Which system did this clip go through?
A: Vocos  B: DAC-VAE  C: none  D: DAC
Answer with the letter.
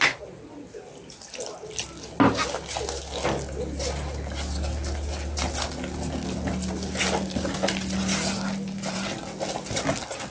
C